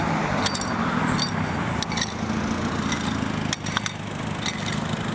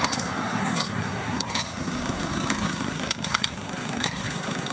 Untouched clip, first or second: first